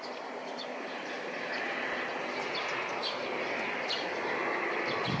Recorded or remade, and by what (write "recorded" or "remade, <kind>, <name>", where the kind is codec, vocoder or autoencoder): recorded